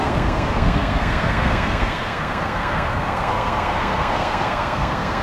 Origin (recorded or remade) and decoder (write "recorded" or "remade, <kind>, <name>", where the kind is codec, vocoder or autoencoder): remade, codec, SNAC